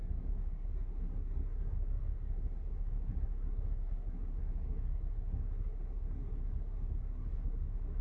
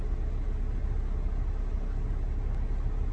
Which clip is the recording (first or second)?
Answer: second